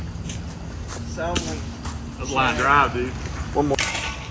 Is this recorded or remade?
recorded